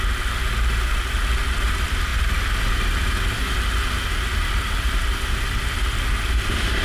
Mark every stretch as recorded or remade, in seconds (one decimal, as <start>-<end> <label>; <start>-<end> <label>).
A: 0.0-6.8 recorded